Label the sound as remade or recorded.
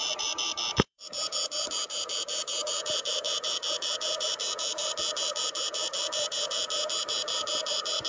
remade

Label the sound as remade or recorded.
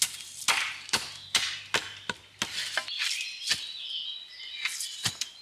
recorded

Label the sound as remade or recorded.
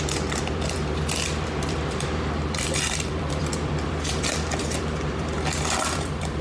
remade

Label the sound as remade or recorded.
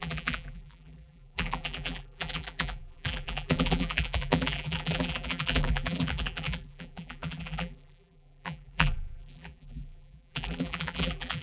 remade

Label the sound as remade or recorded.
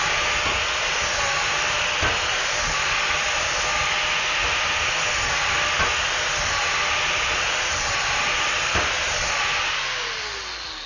recorded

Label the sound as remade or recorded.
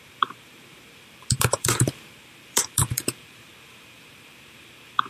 remade